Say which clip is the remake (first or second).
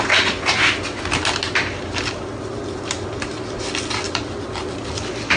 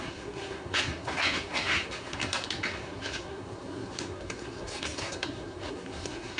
second